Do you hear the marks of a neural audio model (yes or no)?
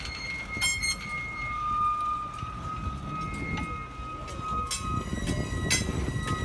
no